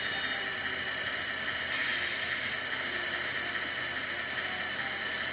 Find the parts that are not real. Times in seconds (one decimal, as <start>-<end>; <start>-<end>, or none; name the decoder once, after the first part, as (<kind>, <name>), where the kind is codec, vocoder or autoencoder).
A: none